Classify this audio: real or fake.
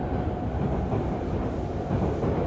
real